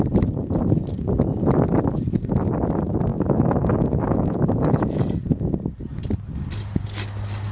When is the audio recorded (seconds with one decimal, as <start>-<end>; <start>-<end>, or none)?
0.0-3.1; 5.0-7.5